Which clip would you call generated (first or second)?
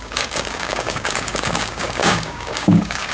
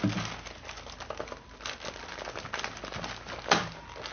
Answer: first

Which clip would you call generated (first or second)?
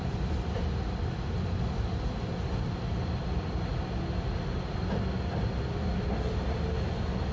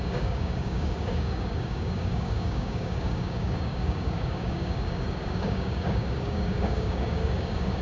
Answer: second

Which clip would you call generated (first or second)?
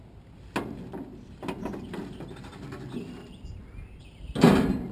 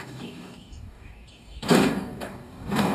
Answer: second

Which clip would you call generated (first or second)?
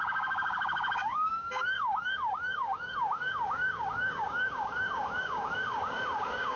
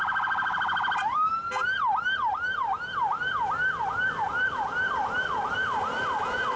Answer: first